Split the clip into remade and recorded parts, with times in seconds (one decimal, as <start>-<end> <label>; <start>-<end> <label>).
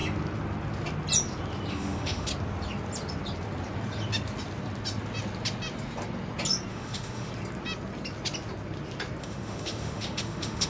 0.0-1.7 recorded; 1.7-2.3 remade; 2.3-6.7 recorded; 6.7-7.3 remade; 7.3-9.2 recorded; 9.2-10.7 remade